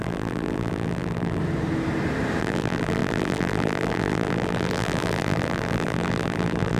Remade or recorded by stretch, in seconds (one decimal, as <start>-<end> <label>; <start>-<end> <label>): 0.0-1.4 remade; 1.4-2.4 recorded; 2.4-6.8 remade